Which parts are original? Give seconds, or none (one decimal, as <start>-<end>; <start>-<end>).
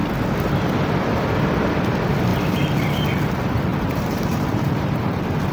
0.0-2.3; 3.1-3.7; 5.0-5.5